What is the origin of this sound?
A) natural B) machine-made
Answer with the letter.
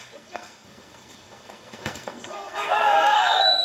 B